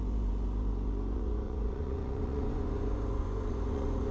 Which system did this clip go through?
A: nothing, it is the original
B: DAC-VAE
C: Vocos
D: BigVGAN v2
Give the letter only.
C